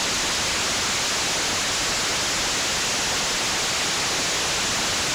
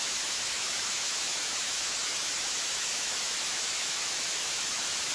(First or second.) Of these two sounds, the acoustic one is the first